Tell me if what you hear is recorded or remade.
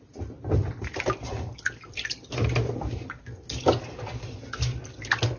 recorded